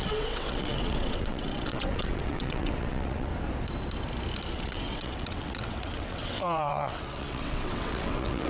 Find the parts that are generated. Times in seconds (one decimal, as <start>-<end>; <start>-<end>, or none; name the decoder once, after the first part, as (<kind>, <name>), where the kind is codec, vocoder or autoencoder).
0.0-3.3 (vocoder, WaveNeXt); 4.5-8.5